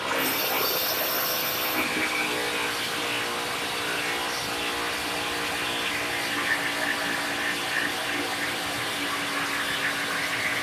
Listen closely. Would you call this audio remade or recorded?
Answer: recorded